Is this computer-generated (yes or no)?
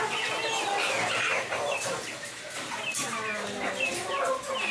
no